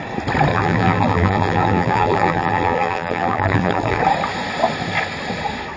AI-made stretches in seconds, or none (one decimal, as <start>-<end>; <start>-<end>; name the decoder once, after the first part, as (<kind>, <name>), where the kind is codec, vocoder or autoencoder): 0.5-4.0 (vocoder, BigVGAN v2)